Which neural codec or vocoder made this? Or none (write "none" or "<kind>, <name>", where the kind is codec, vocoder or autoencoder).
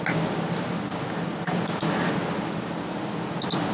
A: none